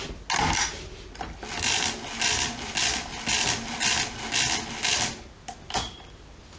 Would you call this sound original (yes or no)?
yes